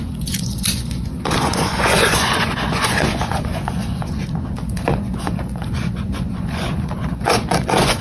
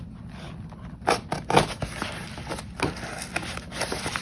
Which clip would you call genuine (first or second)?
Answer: second